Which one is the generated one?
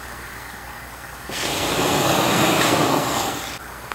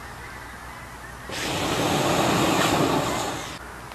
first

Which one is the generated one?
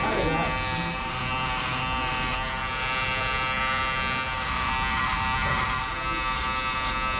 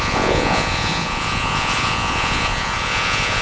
second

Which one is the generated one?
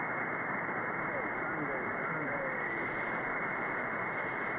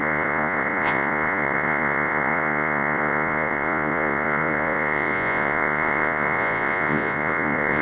second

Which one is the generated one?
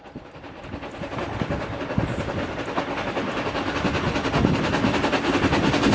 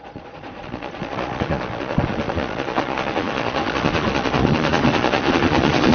second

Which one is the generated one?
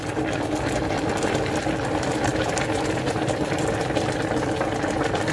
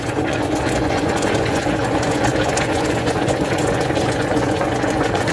second